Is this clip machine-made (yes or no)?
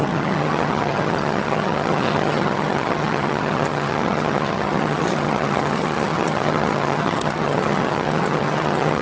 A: yes